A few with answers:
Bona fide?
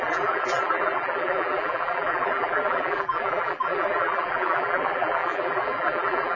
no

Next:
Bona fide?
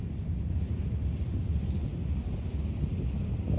yes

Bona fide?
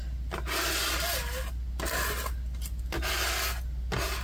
yes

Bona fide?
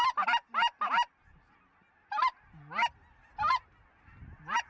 yes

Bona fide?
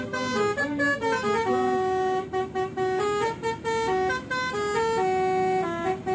yes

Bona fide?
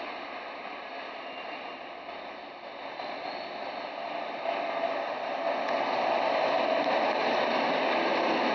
yes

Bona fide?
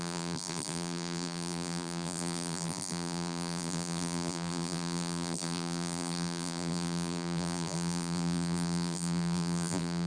no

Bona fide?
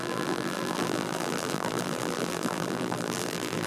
no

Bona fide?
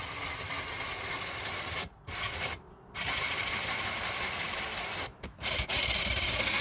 no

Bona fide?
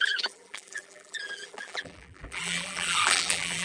no